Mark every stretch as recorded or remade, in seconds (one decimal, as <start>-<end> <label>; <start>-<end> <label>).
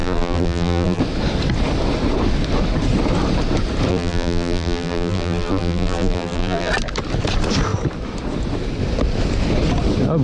0.0-1.0 remade; 1.0-3.9 recorded; 3.9-6.7 remade; 6.7-10.2 recorded